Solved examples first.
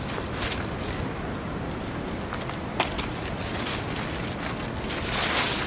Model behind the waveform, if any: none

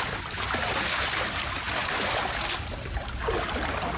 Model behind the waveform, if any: none